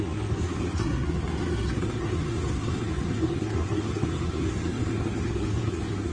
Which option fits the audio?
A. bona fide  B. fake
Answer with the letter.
B